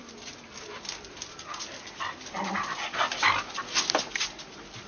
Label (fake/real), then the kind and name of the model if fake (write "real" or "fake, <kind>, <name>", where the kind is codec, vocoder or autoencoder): real